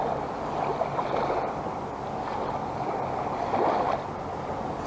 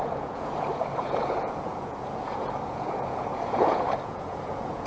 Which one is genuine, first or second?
first